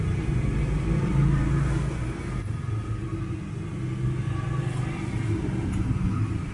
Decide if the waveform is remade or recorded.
recorded